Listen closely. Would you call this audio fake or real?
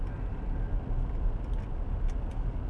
real